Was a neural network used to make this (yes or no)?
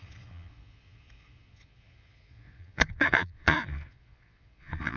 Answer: yes